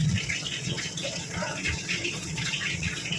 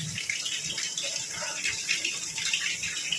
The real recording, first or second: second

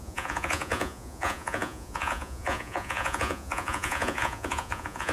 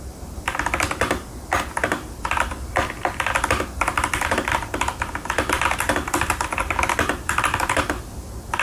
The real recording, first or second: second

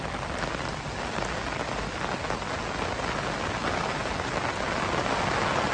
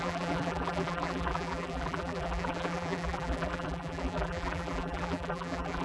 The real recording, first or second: first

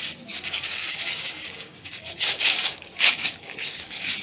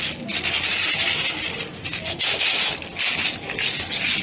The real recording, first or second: second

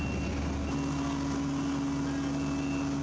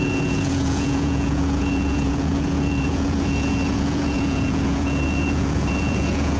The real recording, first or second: first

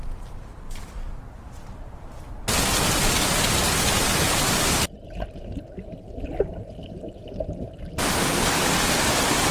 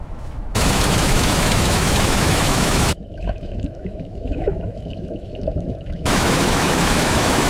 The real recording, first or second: first